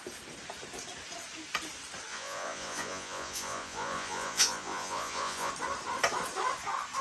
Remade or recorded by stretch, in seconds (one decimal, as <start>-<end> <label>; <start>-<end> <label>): 0.0-2.1 recorded; 2.1-5.5 remade; 5.5-7.0 recorded